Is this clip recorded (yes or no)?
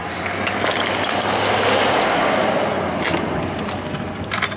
yes